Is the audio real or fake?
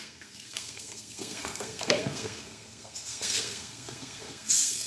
fake